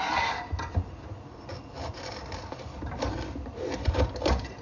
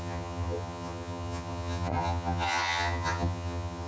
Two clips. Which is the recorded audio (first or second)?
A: first